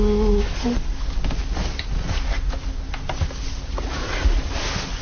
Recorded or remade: recorded